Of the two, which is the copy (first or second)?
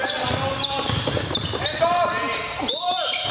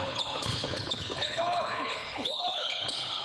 second